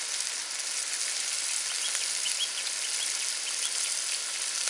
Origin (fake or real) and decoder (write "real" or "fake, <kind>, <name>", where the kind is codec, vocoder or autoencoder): real